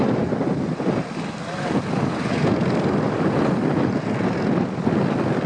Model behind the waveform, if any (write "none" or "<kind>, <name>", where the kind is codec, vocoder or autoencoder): none